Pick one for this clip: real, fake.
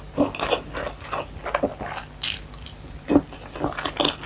real